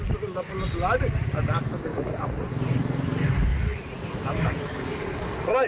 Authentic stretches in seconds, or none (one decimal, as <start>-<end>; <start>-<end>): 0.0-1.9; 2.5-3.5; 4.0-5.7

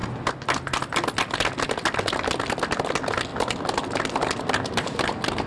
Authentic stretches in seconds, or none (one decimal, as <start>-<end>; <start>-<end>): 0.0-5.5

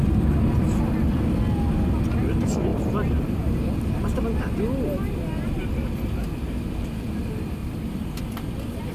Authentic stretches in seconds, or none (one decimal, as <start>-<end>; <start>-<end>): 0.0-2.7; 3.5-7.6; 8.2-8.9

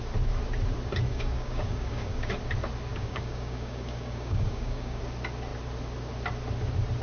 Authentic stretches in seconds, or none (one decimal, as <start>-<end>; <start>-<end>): 0.0-1.1; 2.3-2.9; 5.0-7.0